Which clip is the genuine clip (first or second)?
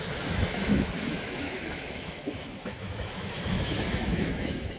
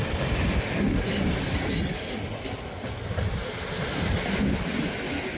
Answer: second